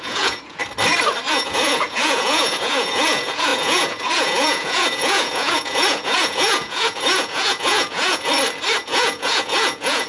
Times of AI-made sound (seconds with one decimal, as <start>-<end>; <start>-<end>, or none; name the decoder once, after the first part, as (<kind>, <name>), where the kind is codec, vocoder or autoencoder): 0.0-0.6 (vocoder, Vocos); 1.3-8.3; 8.8-10.1